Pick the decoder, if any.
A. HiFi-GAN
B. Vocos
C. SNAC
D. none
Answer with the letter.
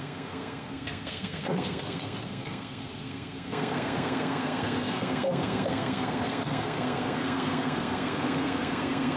C